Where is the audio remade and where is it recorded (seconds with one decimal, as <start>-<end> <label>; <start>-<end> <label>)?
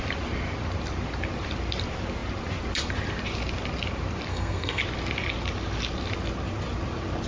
0.0-4.3 recorded; 4.3-4.8 remade; 4.8-7.3 recorded